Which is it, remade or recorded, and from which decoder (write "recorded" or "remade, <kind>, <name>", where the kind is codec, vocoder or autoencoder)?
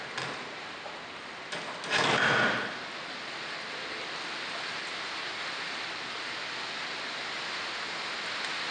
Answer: recorded